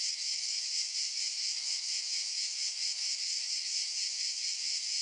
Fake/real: fake